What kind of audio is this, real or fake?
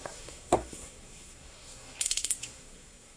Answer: fake